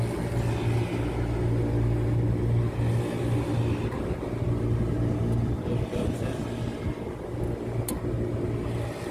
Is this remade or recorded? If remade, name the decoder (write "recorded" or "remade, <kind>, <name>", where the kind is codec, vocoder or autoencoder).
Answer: recorded